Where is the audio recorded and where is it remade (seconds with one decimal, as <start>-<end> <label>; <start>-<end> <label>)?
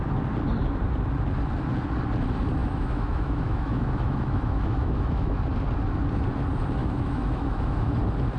0.0-2.6 recorded; 2.6-5.4 remade; 5.4-6.8 recorded; 6.8-8.0 remade; 8.0-8.4 recorded